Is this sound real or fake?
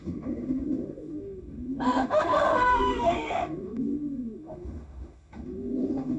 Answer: fake